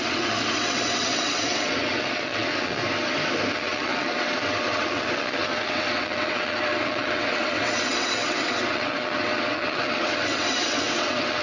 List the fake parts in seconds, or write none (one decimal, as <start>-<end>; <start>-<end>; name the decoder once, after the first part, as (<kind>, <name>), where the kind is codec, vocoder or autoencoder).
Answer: 0.0-2.8 (vocoder, WaveNeXt); 3.5-11.4

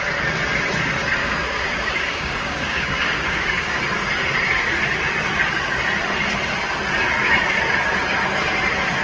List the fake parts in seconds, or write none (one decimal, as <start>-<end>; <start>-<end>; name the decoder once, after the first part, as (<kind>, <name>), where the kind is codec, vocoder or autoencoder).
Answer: 1.2-3.8 (codec, DAC)

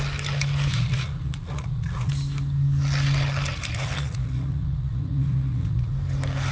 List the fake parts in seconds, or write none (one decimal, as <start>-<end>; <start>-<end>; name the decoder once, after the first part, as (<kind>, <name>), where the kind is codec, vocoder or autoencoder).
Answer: 0.7-2.1 (vocoder, Vocos); 3.5-5.9

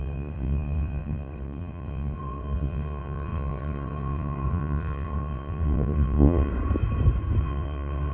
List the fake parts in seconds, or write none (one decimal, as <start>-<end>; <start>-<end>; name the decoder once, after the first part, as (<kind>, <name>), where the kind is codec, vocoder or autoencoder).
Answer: 0.0-6.5 (vocoder, WaveNeXt); 7.4-8.1

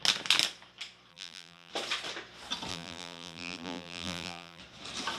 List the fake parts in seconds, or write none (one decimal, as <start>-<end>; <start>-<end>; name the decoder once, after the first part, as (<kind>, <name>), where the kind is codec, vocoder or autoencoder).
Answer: 1.1-1.7 (vocoder, BigVGAN v2); 2.7-4.6

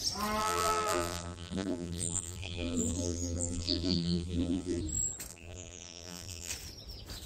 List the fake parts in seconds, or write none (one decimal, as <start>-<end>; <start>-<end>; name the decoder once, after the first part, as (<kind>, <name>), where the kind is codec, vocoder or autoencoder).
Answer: 0.4-4.8 (vocoder, BigVGAN v2); 5.3-6.5

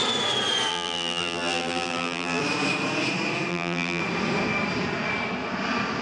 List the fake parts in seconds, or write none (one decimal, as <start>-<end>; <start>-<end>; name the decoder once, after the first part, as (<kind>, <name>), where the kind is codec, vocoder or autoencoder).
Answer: 0.7-2.4 (vocoder, BigVGAN v2); 3.5-4.0